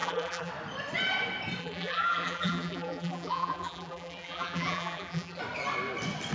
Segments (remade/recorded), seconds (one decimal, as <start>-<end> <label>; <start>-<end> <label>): 0.0-0.5 remade; 0.5-1.6 recorded; 1.6-5.4 remade; 5.4-6.3 recorded